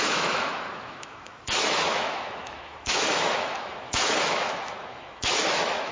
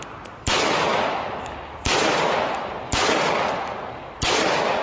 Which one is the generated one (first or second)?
first